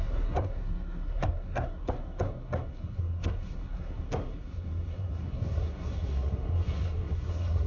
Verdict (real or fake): fake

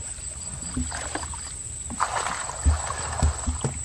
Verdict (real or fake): real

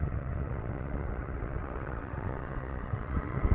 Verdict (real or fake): fake